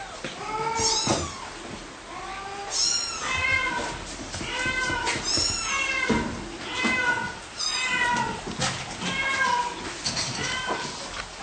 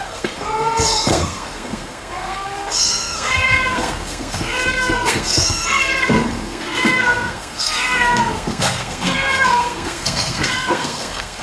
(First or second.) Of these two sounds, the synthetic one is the second